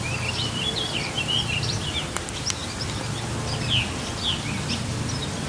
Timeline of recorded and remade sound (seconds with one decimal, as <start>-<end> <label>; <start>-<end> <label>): 0.0-2.6 remade; 2.6-3.6 recorded; 3.6-5.5 remade